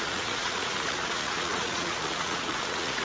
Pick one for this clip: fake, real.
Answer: fake